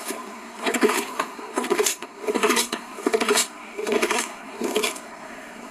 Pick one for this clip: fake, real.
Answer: fake